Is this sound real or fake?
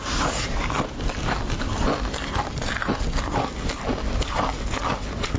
real